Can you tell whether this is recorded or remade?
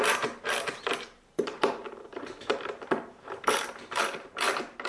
remade